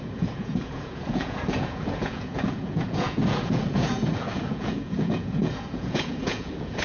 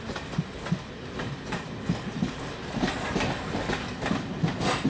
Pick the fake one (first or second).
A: first